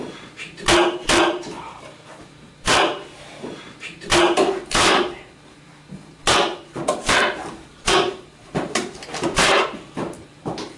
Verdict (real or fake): fake